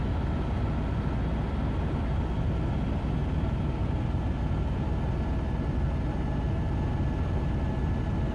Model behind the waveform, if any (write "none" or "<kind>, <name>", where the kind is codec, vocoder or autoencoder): none